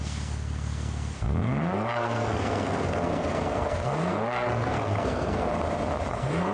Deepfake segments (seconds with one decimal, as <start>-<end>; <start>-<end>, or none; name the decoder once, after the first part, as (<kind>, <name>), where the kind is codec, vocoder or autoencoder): 0.0-5.5 (codec, SNAC); 6.1-6.5